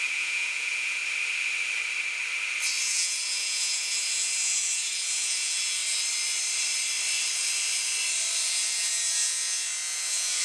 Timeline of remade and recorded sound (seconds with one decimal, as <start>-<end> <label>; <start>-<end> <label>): 0.0-1.0 remade; 1.0-2.8 recorded; 2.8-5.8 remade; 5.8-8.4 recorded; 8.4-10.4 remade